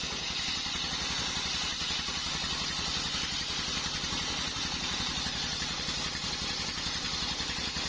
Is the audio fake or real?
real